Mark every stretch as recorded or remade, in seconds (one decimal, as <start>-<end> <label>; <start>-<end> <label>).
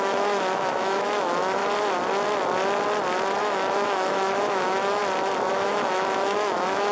0.0-1.6 remade; 1.6-3.4 recorded; 3.4-5.0 remade; 5.0-5.5 recorded; 5.5-6.9 remade